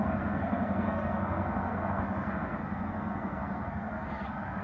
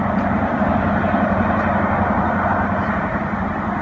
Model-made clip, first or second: first